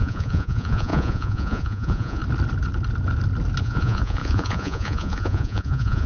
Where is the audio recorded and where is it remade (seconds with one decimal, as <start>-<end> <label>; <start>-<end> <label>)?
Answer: 0.0-2.2 remade; 2.2-3.6 recorded; 3.6-6.1 remade